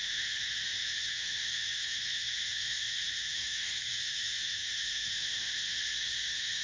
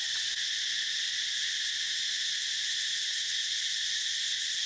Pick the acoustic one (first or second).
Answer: second